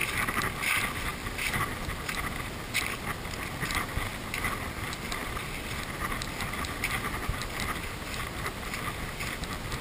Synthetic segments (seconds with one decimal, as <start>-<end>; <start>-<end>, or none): none